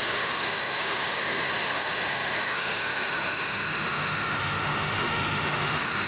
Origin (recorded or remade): remade